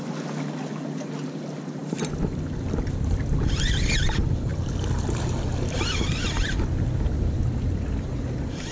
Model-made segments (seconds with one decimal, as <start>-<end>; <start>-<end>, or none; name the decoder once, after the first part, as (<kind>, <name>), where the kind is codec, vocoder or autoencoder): none